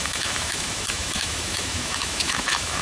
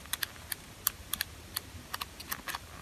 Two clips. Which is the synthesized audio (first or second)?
first